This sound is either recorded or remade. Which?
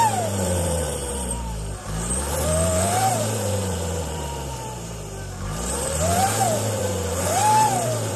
remade